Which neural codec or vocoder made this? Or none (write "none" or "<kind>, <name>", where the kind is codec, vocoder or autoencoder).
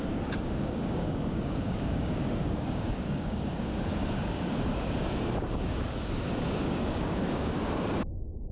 codec, DAC